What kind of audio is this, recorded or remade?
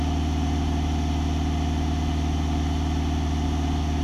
recorded